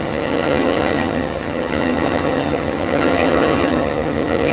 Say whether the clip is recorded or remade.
remade